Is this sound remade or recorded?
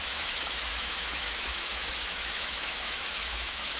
remade